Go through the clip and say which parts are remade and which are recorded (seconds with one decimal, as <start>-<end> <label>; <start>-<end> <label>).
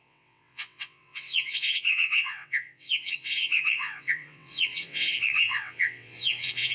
0.0-6.7 remade